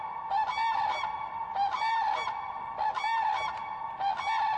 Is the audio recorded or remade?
recorded